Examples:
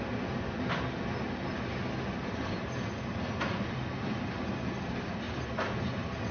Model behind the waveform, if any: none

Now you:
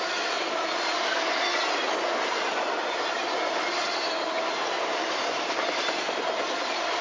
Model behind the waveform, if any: none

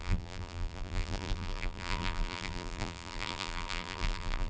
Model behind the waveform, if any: vocoder, BigVGAN v2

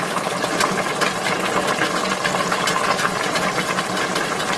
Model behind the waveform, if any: none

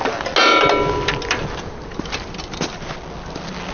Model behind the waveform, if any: none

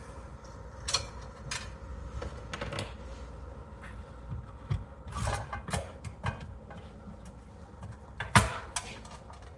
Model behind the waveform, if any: none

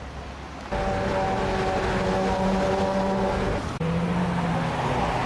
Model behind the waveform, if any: none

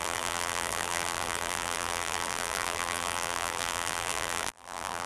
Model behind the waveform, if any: vocoder, BigVGAN v2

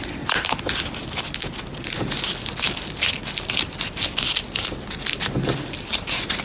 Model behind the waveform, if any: none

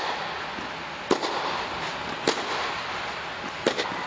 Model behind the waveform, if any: none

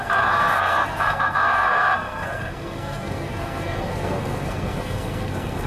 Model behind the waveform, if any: codec, SNAC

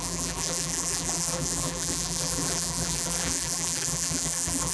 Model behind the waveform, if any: vocoder, BigVGAN v2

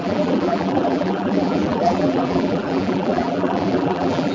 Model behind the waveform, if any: vocoder, BigVGAN v2